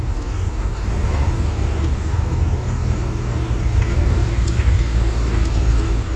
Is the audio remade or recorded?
remade